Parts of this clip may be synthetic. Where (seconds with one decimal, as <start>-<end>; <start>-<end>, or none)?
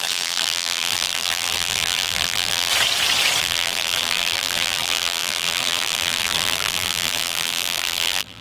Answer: 0.0-2.7; 3.4-8.4